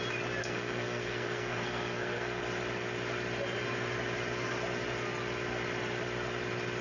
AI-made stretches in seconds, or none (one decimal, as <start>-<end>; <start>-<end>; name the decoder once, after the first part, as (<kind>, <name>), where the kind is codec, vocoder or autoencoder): 0.4-2.4 (codec, SNAC)